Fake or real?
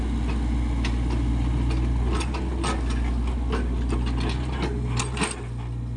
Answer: real